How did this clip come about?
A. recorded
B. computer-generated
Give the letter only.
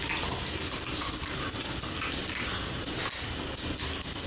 A